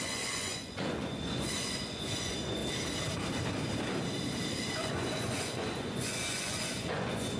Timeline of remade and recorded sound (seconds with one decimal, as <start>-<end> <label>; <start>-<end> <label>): 0.0-2.6 remade; 2.6-4.7 recorded; 4.7-7.4 remade